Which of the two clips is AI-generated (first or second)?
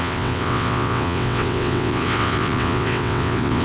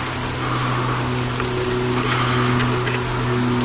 first